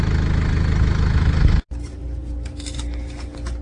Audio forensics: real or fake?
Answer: real